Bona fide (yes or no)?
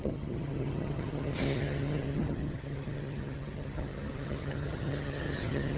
no